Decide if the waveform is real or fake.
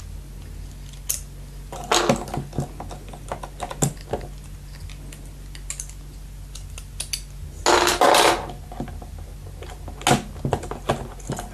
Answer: real